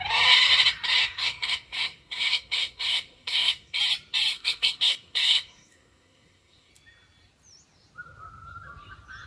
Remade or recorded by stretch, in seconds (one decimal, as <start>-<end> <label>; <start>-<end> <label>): 0.0-1.0 recorded; 1.0-3.8 remade; 3.8-4.3 recorded; 4.3-6.7 remade; 6.7-9.3 recorded

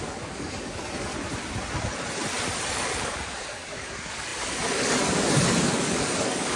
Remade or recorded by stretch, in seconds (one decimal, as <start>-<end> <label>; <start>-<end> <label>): 0.0-1.1 remade; 1.1-2.7 recorded; 2.7-6.6 remade

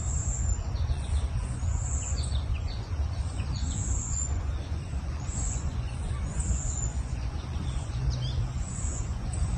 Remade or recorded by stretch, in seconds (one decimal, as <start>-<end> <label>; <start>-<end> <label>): 0.0-9.6 remade

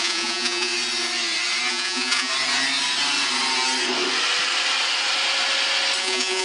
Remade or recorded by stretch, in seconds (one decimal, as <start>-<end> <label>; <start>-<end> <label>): 0.0-0.7 remade; 0.7-1.7 recorded; 1.7-2.3 remade; 2.3-6.0 recorded; 6.0-6.4 remade